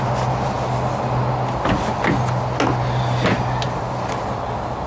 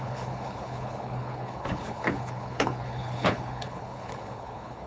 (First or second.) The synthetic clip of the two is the second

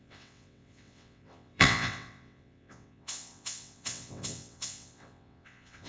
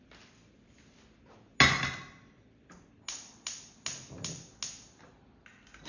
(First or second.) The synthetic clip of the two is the first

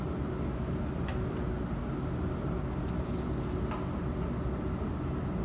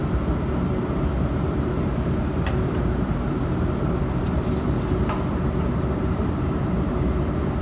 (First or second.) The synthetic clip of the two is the second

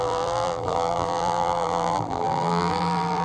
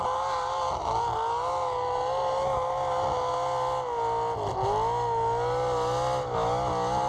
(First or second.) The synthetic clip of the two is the first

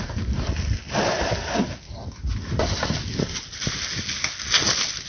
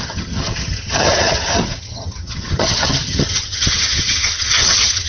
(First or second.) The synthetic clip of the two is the second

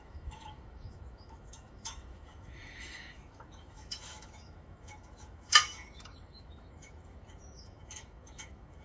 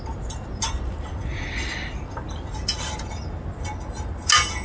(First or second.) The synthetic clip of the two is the first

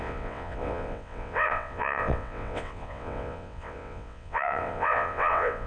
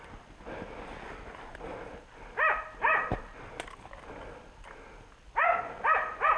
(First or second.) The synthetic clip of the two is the first